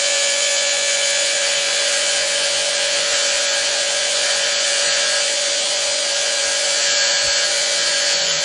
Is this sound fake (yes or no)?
yes